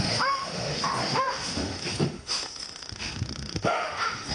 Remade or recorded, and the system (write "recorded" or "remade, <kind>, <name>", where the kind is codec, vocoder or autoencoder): remade, autoencoder, DAC-VAE